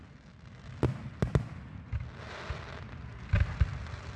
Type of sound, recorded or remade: recorded